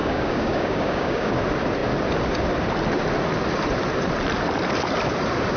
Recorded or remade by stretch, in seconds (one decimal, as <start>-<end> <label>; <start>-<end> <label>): 0.0-1.3 remade; 1.3-5.6 recorded

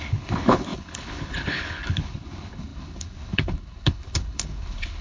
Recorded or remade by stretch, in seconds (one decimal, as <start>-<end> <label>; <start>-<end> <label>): 0.0-5.0 remade

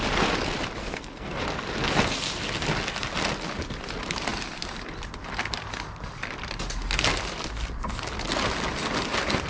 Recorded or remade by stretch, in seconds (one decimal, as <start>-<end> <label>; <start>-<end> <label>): 0.0-0.8 recorded; 0.8-1.4 remade; 1.4-9.5 recorded

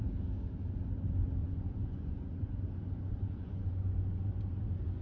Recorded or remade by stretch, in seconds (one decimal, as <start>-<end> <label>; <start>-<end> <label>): 0.0-1.4 recorded; 1.4-4.4 remade; 4.4-5.0 recorded

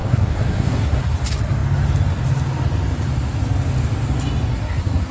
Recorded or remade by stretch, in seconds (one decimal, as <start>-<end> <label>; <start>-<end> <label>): 0.0-1.1 remade; 1.1-4.5 recorded; 4.5-5.1 remade

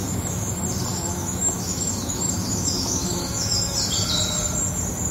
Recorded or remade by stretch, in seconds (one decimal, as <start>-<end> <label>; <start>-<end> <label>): 0.0-0.5 remade; 0.5-0.9 recorded; 0.9-3.5 remade; 3.5-5.1 recorded

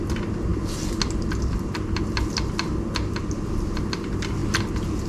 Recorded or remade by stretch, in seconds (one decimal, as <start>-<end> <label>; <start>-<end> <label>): 0.0-5.1 recorded

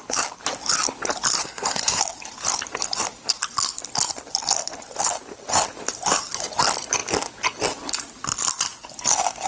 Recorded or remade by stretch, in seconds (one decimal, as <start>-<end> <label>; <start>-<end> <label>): 0.0-1.4 recorded; 1.4-2.0 remade; 2.0-9.5 recorded